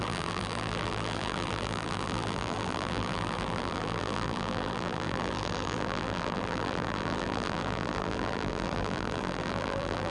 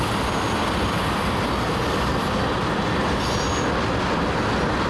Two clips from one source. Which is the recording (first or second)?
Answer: second